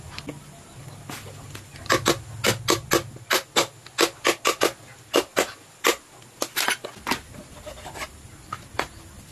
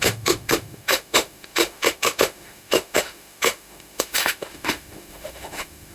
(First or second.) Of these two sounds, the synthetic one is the second